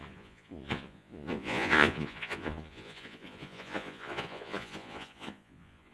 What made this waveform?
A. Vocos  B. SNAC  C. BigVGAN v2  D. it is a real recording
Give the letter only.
A